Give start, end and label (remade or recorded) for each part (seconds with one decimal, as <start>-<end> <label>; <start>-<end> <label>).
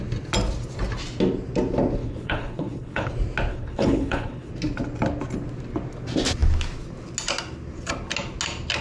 0.0-2.0 recorded; 2.0-3.1 remade; 3.1-3.5 recorded; 3.5-4.5 remade; 4.5-8.8 recorded